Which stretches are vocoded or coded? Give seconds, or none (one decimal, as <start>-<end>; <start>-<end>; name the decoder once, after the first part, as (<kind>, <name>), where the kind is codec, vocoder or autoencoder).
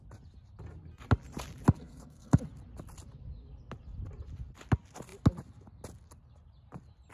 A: 1.8-2.4 (codec, SNAC)